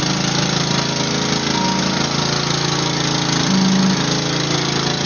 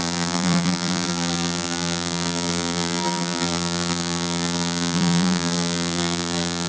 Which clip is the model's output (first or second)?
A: second